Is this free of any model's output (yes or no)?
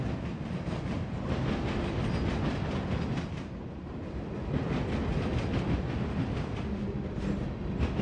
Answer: yes